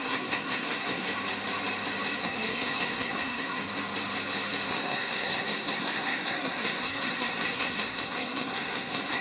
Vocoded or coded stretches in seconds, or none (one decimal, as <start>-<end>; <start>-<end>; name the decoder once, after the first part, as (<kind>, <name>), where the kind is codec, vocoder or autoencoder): 0.0-1.1 (codec, SNAC); 2.2-3.6; 4.7-9.2